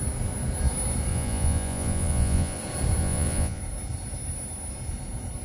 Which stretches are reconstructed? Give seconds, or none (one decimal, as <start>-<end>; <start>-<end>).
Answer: 1.1-2.6; 3.0-3.6